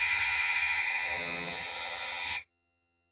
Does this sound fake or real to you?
fake